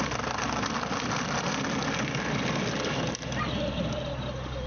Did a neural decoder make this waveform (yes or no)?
no